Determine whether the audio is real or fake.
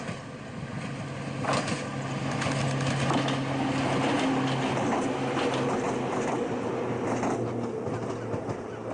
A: real